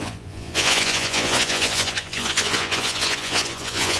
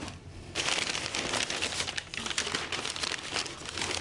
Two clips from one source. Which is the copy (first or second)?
first